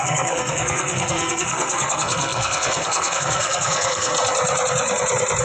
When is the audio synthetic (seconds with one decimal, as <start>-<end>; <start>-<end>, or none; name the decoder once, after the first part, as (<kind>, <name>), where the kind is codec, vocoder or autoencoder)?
0.0-4.1 (codec, SNAC)